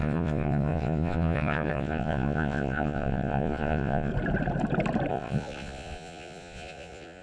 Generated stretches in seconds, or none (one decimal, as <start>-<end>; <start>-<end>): 0.0-4.1; 5.1-7.2